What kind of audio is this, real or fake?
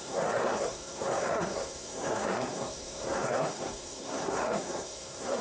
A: fake